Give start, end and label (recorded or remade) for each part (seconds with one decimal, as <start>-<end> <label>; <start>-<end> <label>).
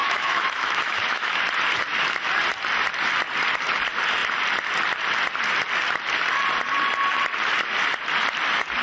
0.0-1.4 remade; 1.4-8.8 recorded